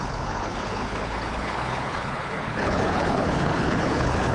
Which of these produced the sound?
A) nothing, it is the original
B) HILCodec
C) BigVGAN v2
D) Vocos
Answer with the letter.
B